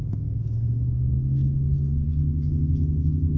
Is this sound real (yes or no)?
no